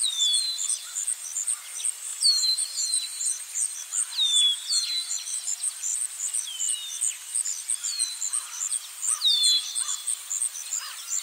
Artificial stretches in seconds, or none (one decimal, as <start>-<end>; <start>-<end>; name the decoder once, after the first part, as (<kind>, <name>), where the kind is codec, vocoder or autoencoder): 2.1-3.4 (vocoder, BigVGAN v2)